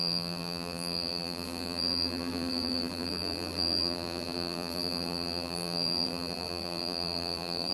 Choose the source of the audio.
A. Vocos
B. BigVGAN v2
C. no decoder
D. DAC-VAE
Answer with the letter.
B